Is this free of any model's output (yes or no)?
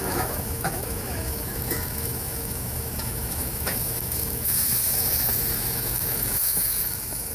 no